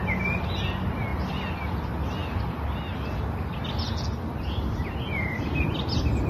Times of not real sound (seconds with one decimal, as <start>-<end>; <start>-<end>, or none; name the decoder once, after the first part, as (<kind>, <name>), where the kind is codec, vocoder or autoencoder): none